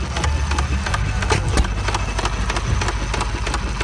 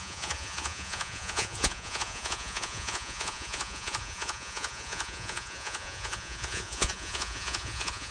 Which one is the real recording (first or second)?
first